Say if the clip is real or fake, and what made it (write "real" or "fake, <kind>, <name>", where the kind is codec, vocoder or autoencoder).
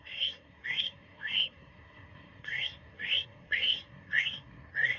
fake, codec, SNAC